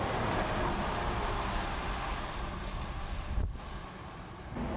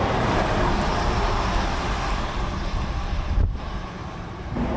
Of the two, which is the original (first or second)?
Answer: first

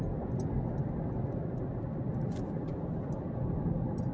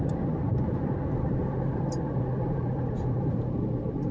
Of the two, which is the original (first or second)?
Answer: first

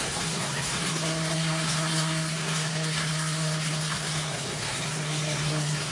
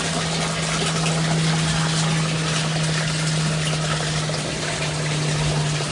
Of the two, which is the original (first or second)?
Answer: second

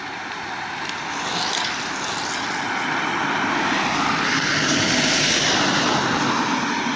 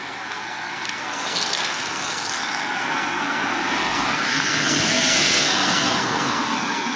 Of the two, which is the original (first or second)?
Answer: first